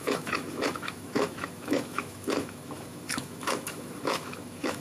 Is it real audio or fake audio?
fake